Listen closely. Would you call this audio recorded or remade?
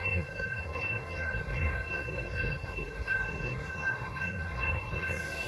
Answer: remade